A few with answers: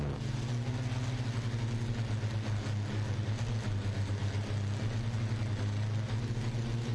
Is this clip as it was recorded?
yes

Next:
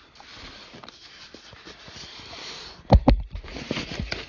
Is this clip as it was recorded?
yes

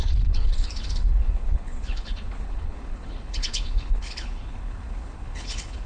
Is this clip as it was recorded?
no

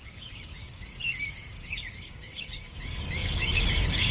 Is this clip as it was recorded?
no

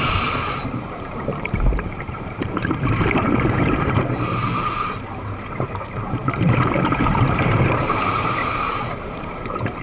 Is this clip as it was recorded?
no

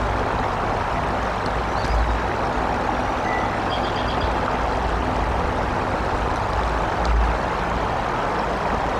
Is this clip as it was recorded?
yes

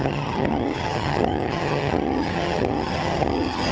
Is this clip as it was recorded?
no